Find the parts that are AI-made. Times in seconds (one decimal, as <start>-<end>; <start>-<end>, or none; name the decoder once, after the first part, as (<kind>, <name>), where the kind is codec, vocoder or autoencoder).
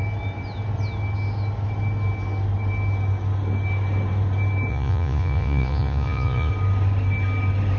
4.7-6.5 (vocoder, Vocos)